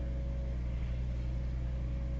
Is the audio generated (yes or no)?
no